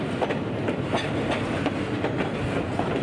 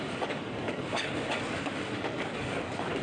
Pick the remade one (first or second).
second